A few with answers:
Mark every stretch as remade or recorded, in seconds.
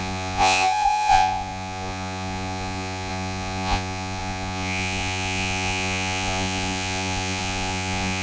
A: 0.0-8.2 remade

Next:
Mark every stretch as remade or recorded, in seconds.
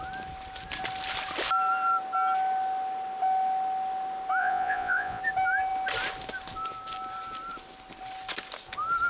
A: 0.0-4.4 recorded; 4.4-5.2 remade; 5.2-9.1 recorded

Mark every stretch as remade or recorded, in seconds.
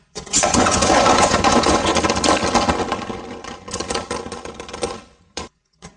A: 0.0-1.9 remade; 1.9-5.2 recorded; 5.2-6.0 remade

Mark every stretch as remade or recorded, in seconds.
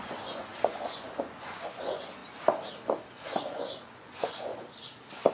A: 0.0-2.2 remade; 2.2-3.1 recorded; 3.1-4.5 remade; 4.5-5.3 recorded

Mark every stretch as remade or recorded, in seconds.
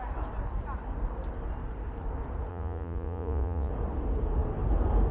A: 0.0-2.5 recorded; 2.5-3.7 remade; 3.7-5.1 recorded